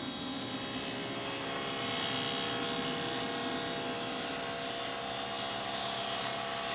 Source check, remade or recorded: recorded